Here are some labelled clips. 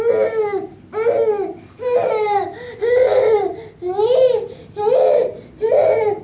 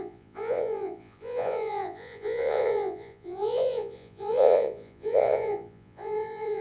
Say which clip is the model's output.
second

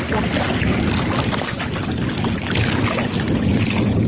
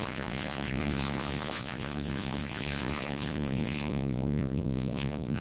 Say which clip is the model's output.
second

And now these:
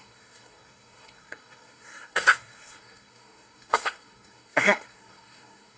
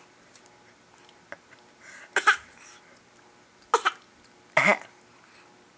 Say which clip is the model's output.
first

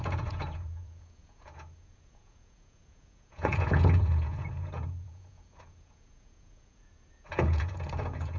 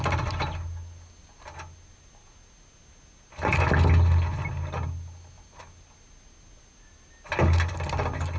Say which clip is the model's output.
first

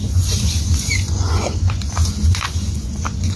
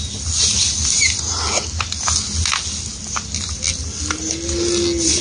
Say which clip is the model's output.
first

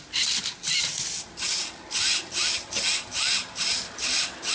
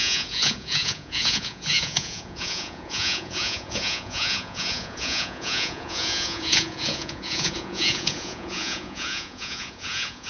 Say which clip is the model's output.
second